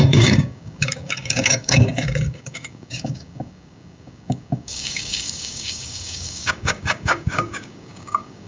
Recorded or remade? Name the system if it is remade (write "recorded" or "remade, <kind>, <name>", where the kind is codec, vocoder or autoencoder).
remade, codec, DAC